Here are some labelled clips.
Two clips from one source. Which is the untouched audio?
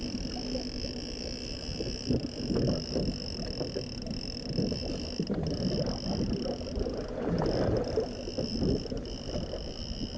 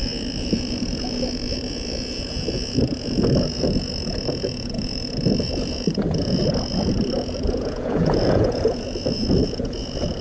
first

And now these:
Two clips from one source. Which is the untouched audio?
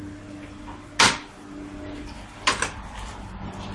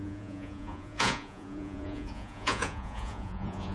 first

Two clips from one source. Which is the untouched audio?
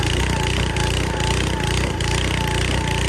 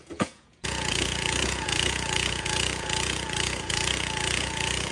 first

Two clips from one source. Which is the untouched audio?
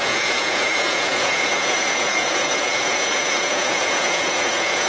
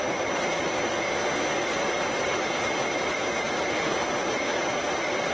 second